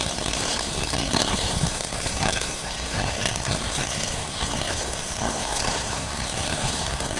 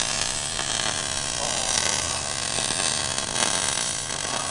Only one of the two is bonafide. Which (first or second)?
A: second